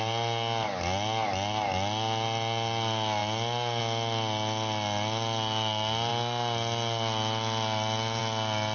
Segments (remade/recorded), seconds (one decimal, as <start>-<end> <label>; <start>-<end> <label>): 0.0-8.7 recorded